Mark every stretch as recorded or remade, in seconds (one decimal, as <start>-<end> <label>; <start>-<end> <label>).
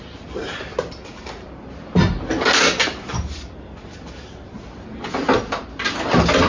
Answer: 0.0-6.5 recorded